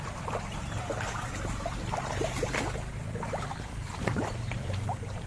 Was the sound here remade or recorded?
remade